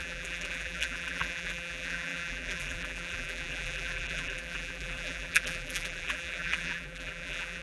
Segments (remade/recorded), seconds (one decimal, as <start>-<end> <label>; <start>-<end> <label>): 0.0-7.6 remade